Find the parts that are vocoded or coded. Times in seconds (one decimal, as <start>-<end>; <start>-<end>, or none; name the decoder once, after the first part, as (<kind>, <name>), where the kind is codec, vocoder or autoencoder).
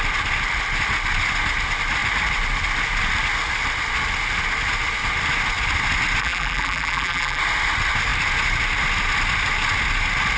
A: 6.2-7.4 (vocoder, BigVGAN v2)